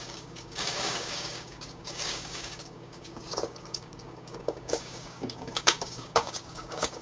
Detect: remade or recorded remade